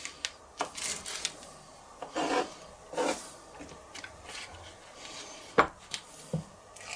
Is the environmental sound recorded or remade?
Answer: recorded